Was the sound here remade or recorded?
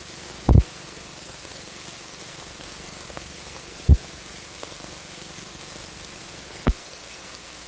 remade